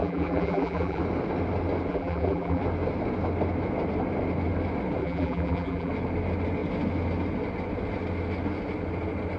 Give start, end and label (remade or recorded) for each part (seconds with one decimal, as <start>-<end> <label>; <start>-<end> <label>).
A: 0.0-1.0 remade; 1.0-1.9 recorded; 1.9-2.6 remade; 2.6-5.0 recorded; 5.0-5.9 remade; 5.9-9.4 recorded